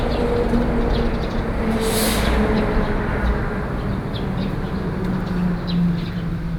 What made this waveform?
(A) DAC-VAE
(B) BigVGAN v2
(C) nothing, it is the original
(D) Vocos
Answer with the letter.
C